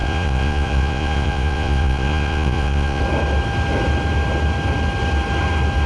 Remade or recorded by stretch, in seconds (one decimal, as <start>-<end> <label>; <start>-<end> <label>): 0.0-3.0 remade; 3.0-5.9 recorded